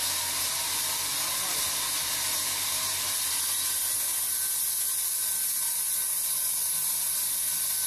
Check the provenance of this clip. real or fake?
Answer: real